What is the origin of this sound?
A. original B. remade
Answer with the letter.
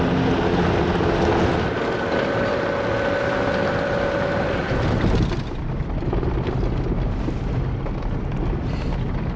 A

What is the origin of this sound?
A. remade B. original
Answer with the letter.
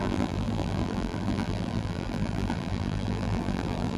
A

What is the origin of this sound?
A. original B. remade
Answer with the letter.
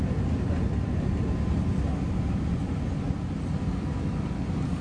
A